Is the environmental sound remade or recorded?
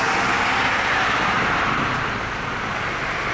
recorded